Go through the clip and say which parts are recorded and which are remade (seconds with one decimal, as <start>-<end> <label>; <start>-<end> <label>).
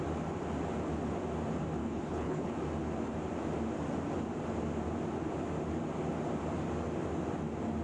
0.0-1.8 recorded; 1.8-2.5 remade; 2.5-7.8 recorded